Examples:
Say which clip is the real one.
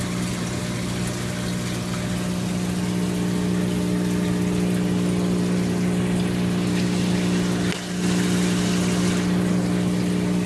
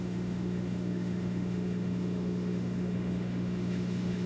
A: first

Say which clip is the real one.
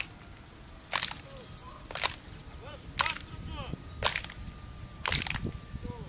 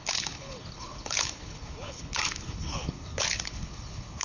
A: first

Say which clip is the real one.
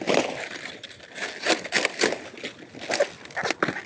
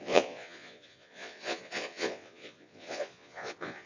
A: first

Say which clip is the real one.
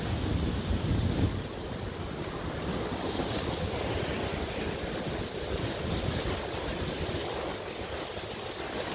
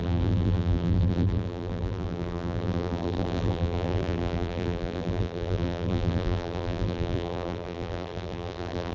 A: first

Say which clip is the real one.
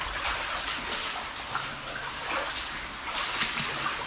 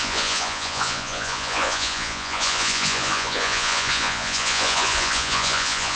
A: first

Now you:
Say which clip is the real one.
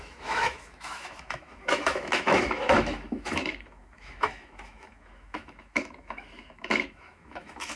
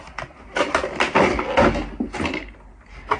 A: second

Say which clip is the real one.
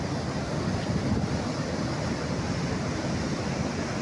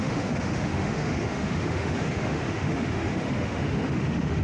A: first